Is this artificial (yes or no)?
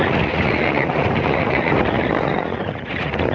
yes